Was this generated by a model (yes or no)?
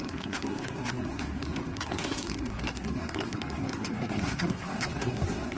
yes